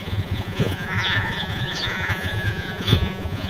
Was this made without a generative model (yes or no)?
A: no